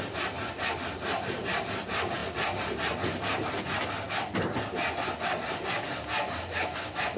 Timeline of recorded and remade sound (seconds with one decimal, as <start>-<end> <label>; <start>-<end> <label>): 0.0-7.2 recorded